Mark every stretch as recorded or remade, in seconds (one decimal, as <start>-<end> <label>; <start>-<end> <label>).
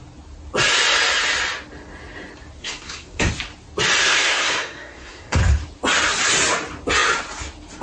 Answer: 0.0-2.6 recorded; 2.6-3.3 remade; 3.3-4.0 recorded; 4.0-5.4 remade; 5.4-7.8 recorded